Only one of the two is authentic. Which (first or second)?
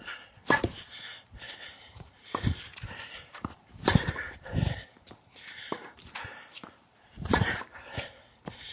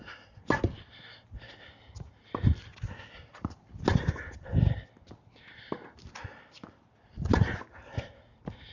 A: second